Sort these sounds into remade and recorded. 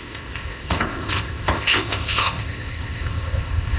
remade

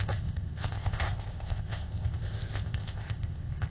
remade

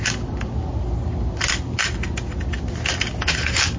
recorded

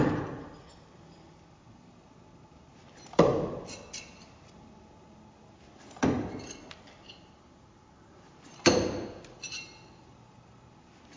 recorded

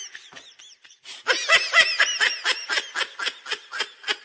recorded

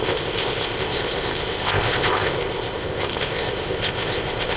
remade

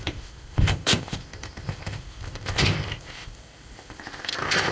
remade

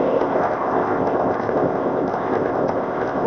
remade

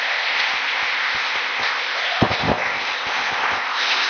remade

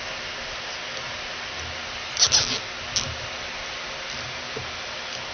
recorded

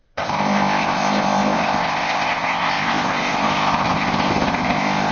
remade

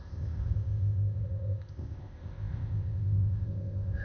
remade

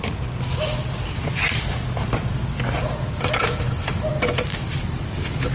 recorded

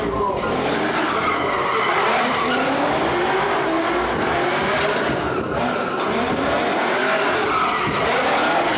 recorded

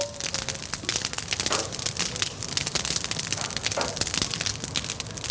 recorded